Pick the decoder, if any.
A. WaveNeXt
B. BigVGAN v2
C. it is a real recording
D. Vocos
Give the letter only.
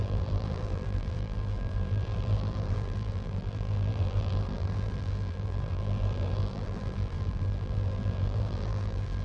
B